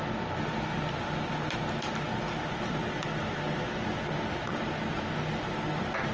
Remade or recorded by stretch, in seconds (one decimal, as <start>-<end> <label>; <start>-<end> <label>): 0.0-6.1 recorded